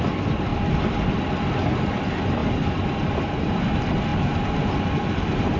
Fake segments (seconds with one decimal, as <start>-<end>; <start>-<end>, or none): none